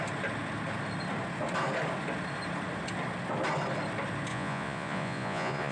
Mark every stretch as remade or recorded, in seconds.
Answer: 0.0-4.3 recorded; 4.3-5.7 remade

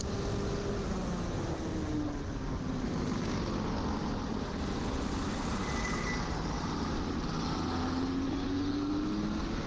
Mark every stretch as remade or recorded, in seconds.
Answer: 0.0-9.7 recorded

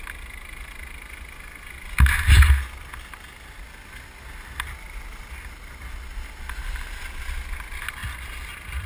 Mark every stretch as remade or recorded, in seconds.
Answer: 0.0-8.0 recorded; 8.0-8.5 remade; 8.5-8.9 recorded

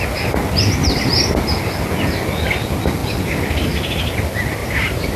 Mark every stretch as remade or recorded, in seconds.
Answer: 0.0-0.8 recorded; 0.8-1.4 remade; 1.4-4.6 recorded; 4.6-5.2 remade

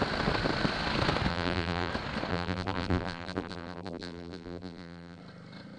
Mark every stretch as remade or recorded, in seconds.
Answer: 0.0-1.3 recorded; 1.3-1.9 remade; 1.9-2.3 recorded; 2.3-5.2 remade; 5.2-5.8 recorded

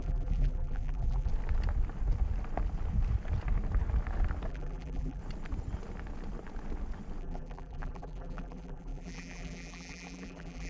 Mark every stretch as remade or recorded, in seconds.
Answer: 0.0-1.3 remade; 1.3-4.5 recorded; 4.5-5.2 remade; 5.2-7.2 recorded; 7.2-10.7 remade

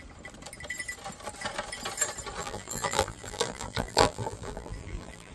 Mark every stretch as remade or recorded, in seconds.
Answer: 0.0-2.4 recorded; 2.4-5.3 remade

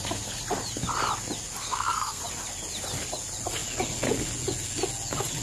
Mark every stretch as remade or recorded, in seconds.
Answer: 0.0-1.6 recorded; 1.6-2.2 remade; 2.2-5.4 recorded